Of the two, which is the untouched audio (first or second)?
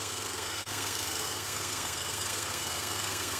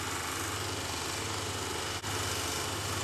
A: second